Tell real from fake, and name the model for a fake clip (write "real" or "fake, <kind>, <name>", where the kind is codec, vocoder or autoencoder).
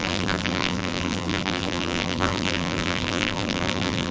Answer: fake, vocoder, BigVGAN v2